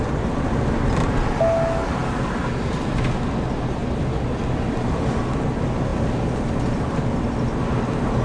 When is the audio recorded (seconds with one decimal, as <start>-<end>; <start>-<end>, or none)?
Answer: 0.0-8.2